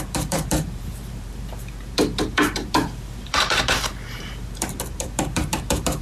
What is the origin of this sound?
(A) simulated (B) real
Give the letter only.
A